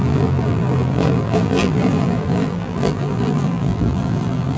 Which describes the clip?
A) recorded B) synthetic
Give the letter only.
B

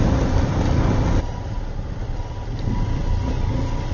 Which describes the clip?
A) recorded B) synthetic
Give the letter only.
A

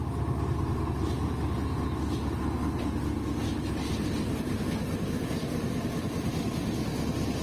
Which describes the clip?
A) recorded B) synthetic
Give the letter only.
A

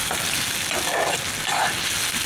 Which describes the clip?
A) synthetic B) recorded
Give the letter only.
B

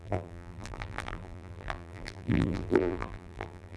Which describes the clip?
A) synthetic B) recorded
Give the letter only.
A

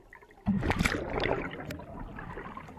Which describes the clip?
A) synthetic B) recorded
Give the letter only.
B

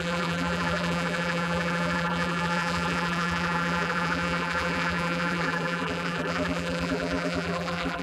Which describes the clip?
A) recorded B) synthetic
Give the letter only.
B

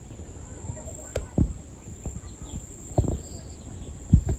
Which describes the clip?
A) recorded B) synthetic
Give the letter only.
A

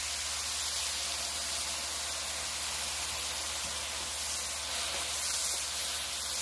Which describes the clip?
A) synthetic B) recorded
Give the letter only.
B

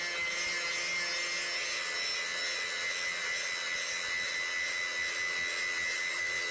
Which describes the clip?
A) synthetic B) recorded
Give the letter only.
B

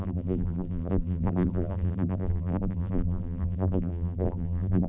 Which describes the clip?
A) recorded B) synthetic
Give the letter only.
B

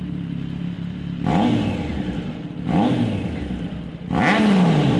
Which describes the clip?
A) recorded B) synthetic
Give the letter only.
A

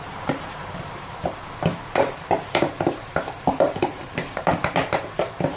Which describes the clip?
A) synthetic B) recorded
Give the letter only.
A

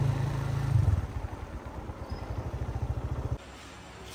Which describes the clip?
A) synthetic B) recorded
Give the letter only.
A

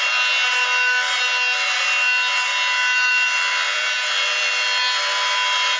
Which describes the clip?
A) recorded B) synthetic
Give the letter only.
A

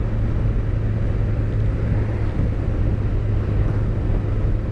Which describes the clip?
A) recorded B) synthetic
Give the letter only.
A